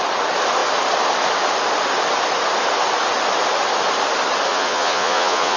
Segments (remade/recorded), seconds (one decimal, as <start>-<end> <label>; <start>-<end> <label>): 0.0-4.5 recorded; 4.5-5.6 remade